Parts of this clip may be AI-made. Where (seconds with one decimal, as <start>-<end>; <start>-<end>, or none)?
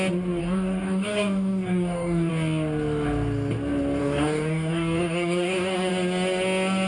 0.4-2.3; 4.0-5.9